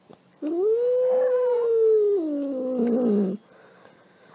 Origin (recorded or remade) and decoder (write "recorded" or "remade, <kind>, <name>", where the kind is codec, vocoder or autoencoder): recorded